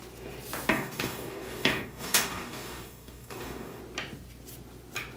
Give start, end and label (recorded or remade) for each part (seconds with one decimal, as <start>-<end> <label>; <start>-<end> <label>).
0.0-0.7 recorded; 0.7-3.8 remade; 3.8-5.2 recorded